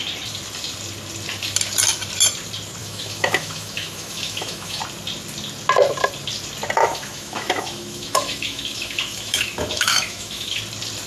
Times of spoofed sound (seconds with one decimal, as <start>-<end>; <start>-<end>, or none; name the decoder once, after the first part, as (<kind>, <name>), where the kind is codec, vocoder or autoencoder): 2.8-4.8 (autoencoder, DAC-VAE); 6.8-10.6